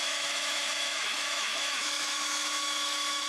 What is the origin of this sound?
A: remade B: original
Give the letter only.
A